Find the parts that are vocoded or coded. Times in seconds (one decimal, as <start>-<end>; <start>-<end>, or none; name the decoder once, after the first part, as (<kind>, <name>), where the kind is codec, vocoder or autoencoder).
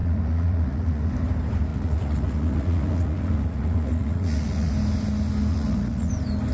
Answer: 0.0-1.1 (vocoder, Vocos); 1.7-4.7; 5.5-6.1